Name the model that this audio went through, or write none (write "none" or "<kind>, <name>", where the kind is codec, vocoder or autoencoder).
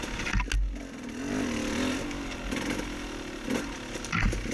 none